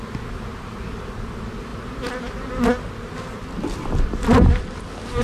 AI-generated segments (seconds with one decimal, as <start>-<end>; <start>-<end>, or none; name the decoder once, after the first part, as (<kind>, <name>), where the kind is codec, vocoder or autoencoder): none